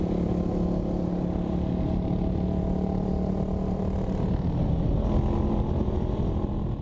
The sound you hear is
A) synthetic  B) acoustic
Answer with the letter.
B